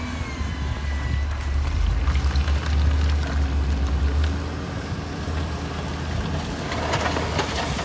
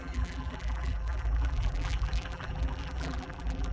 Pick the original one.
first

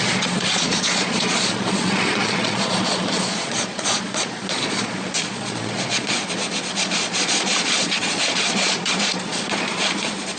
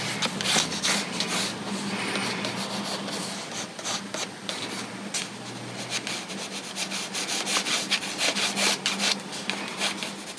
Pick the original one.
second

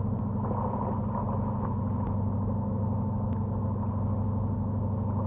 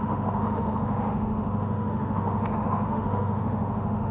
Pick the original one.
first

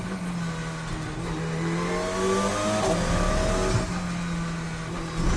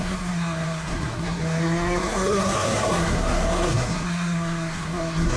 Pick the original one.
first